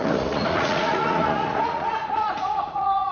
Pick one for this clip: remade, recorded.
remade